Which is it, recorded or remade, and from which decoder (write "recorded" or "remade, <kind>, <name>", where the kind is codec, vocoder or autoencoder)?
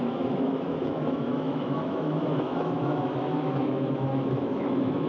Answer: remade, autoencoder, DAC-VAE